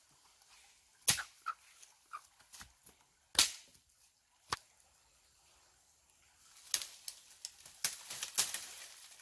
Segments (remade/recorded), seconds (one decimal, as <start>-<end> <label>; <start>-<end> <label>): 0.0-9.2 recorded